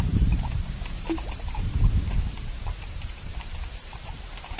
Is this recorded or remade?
remade